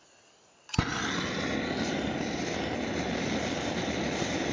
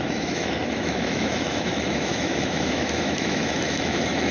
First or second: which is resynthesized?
second